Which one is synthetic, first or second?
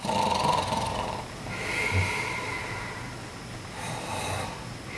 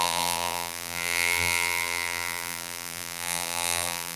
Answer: second